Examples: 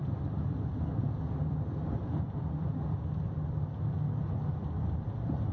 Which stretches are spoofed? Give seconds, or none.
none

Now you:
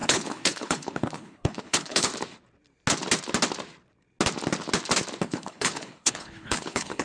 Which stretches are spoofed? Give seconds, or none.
0.0-2.1 (codec, HILCodec); 5.2-7.0

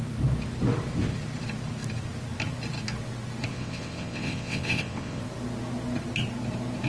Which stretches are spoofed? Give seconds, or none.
3.5-5.2 (vocoder, WaveNeXt)

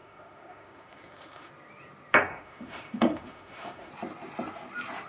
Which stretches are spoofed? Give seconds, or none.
0.0-1.5 (autoencoder, DAC-VAE); 2.3-3.9

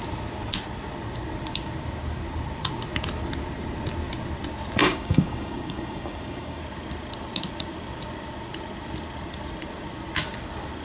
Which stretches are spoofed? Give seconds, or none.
4.8-6.6 (codec, DAC)

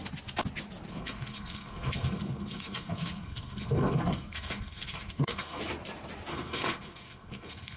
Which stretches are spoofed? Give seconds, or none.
0.9-5.6 (codec, SNAC); 6.3-7.8

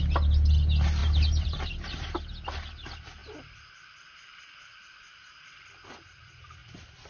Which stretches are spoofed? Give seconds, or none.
1.0-1.7 (vocoder, BigVGAN v2); 3.2-3.7; 6.6-7.1

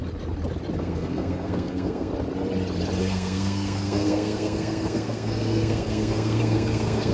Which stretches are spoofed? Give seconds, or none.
0.8-2.1 (codec, SNAC); 3.0-7.1